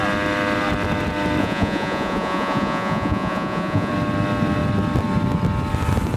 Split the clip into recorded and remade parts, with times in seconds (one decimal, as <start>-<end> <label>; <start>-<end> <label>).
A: 0.0-1.4 recorded; 1.4-3.9 remade; 3.9-6.2 recorded